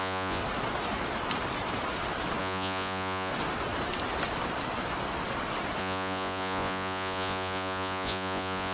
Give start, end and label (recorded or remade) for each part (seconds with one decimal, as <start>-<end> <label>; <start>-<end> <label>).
0.0-0.4 remade; 0.4-2.4 recorded; 2.4-3.3 remade; 3.3-5.8 recorded; 5.8-8.7 remade

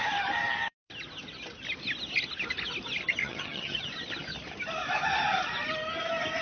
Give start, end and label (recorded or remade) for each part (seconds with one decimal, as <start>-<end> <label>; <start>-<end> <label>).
0.0-3.2 recorded; 3.2-3.8 remade; 3.8-6.4 recorded

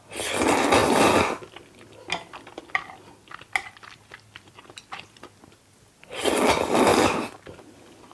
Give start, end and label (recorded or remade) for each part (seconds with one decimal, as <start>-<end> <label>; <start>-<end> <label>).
0.0-8.1 recorded